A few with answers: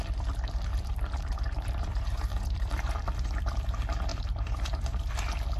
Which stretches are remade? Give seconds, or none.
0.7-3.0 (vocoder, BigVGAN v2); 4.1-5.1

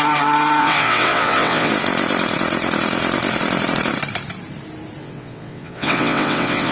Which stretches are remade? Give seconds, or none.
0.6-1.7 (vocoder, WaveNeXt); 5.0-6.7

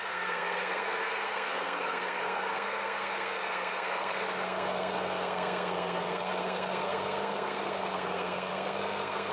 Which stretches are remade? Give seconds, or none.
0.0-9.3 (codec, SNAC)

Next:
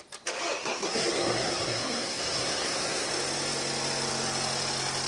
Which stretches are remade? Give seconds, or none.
0.6-3.1 (codec, SNAC)